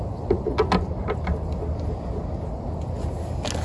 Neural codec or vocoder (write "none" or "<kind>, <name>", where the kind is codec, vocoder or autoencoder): none